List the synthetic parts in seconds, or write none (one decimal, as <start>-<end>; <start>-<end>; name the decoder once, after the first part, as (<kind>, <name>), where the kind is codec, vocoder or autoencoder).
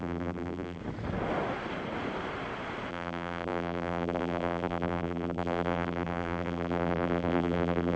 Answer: 0.0-0.8 (vocoder, BigVGAN v2); 2.9-8.0